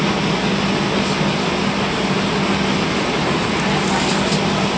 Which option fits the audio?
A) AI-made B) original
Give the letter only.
B